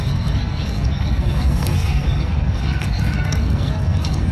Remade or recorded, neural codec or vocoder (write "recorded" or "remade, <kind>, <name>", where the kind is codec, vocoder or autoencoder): remade, codec, SNAC